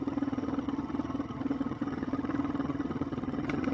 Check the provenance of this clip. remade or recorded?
remade